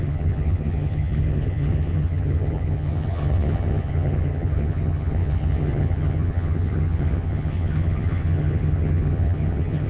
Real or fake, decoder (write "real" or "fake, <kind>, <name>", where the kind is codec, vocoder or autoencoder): fake, vocoder, HiFi-GAN